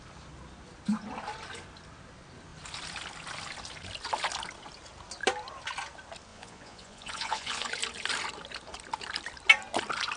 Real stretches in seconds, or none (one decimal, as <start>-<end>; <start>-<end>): 0.0-6.3; 7.7-10.2